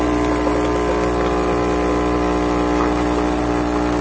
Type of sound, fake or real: real